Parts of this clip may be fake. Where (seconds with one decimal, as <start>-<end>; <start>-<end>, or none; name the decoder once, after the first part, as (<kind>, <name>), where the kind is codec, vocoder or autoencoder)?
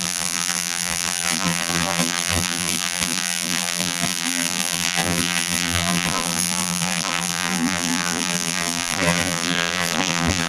0.0-10.5 (vocoder, BigVGAN v2)